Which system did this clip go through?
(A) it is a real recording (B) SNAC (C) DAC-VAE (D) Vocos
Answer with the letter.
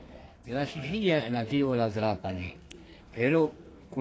B